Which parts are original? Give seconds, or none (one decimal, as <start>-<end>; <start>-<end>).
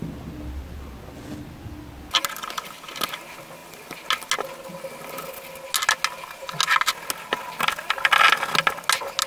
0.0-9.3